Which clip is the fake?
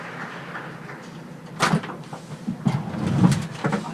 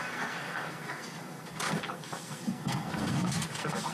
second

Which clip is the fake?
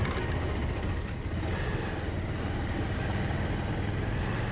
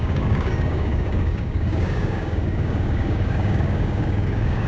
second